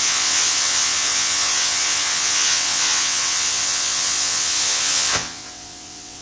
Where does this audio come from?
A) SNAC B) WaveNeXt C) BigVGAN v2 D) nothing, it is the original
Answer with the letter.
B